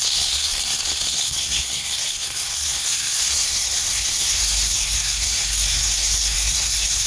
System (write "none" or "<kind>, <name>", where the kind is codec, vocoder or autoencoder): codec, SNAC